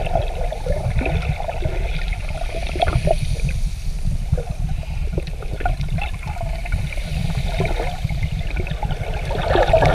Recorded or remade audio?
recorded